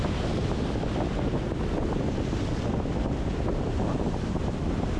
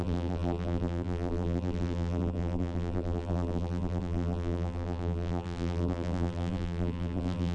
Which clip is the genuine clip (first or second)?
first